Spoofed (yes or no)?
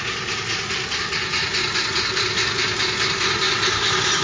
no